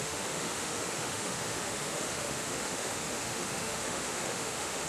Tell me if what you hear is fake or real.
fake